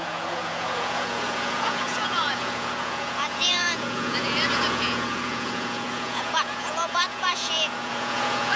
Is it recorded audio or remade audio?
remade